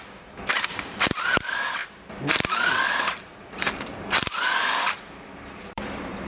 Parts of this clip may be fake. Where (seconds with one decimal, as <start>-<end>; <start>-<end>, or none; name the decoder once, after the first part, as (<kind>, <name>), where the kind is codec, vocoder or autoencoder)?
0.0-1.8 (vocoder, BigVGAN v2); 2.6-6.3